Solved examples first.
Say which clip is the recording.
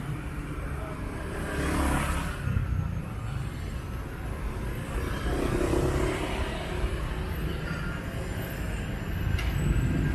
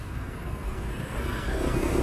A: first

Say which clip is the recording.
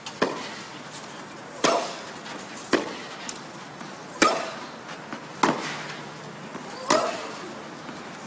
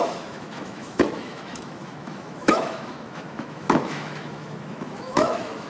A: first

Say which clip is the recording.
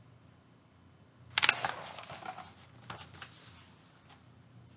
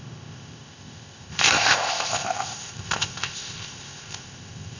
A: first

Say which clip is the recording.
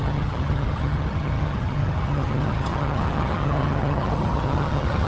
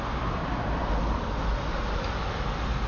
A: second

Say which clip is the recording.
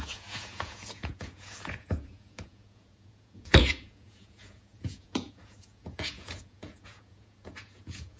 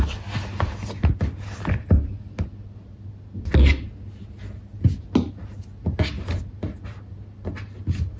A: second